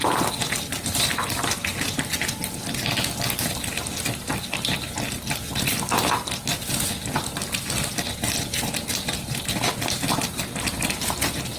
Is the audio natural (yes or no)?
yes